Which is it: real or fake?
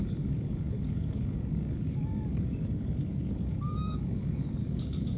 fake